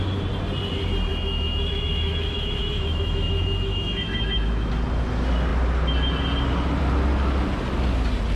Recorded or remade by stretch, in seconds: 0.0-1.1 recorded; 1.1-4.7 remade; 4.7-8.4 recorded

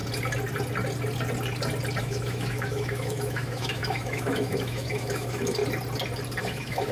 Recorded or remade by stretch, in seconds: 0.0-2.0 recorded; 2.0-5.6 remade; 5.6-6.4 recorded; 6.4-6.9 remade

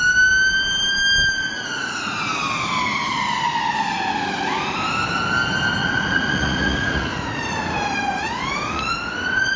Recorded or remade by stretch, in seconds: 0.0-1.7 recorded; 1.7-2.2 remade; 2.2-5.8 recorded; 5.8-9.6 remade

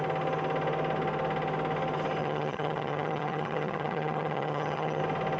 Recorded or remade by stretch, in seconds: 0.0-2.2 recorded; 2.2-5.0 remade; 5.0-5.4 recorded

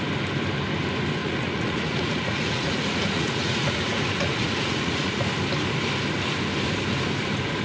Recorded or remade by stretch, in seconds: 0.0-1.2 recorded; 1.2-5.3 remade; 5.3-7.6 recorded

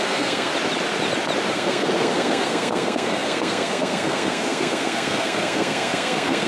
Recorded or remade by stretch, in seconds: 0.0-0.5 remade; 0.5-1.5 recorded; 1.5-6.5 remade

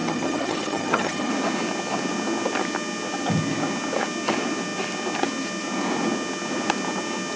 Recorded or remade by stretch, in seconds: 0.0-1.3 remade; 1.3-7.4 recorded

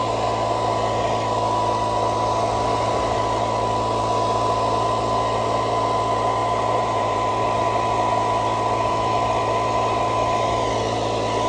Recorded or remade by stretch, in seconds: 0.0-6.4 recorded; 6.4-7.3 remade; 7.3-11.5 recorded